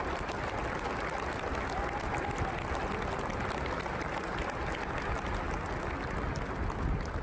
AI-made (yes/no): no